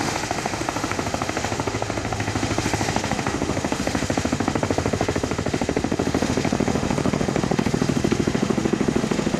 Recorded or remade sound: remade